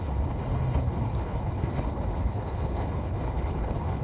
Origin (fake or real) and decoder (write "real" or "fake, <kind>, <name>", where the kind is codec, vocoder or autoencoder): fake, codec, HILCodec